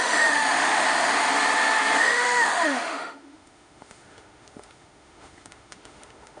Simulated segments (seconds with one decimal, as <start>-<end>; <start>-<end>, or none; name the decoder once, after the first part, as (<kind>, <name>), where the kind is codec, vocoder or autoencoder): 0.0-1.3 (autoencoder, DAC-VAE); 2.0-6.4